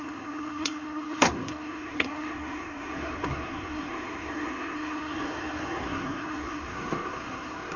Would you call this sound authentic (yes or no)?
no